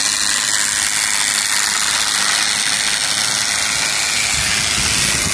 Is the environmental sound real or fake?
real